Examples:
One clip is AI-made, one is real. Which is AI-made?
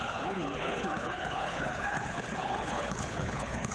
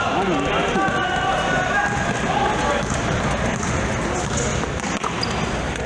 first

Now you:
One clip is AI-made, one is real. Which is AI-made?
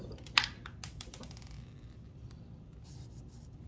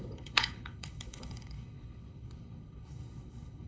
second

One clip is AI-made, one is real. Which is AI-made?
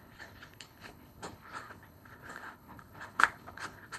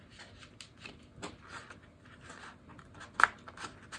first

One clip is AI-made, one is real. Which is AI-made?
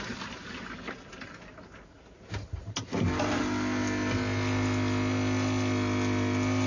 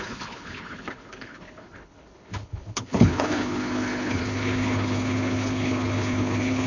second